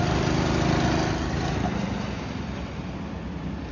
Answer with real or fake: real